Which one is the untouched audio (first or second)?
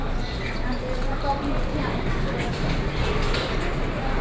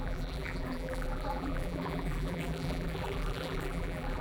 first